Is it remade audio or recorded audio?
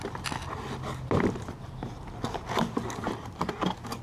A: recorded